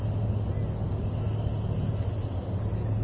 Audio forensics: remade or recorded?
recorded